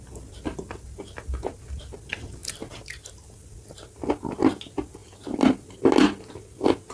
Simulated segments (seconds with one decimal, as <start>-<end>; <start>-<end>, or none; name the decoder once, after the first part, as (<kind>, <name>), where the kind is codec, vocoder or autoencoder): none